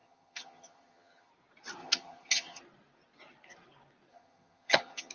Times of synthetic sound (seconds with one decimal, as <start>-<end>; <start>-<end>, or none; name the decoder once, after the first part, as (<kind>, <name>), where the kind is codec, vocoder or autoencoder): 0.0-1.3 (vocoder, HiFi-GAN); 1.8-2.6; 4.1-5.1